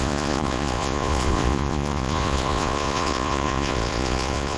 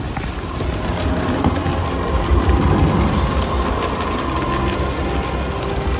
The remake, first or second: first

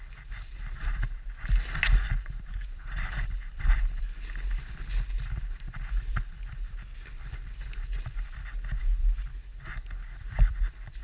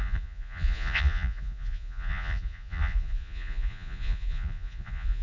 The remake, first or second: second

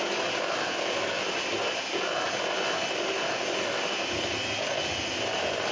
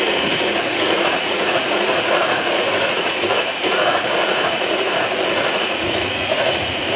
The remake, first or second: second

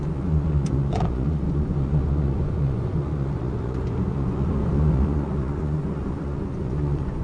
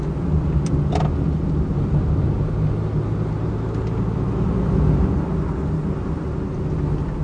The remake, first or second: first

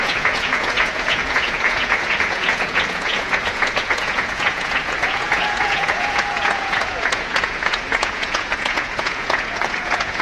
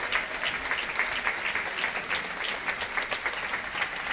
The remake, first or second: first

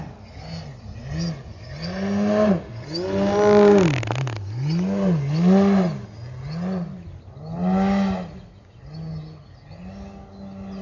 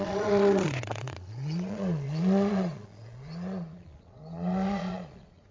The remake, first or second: second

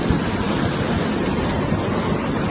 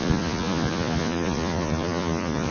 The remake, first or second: second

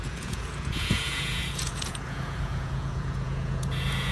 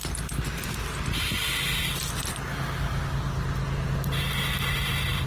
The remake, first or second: first